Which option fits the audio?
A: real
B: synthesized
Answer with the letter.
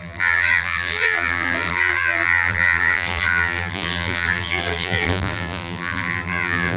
B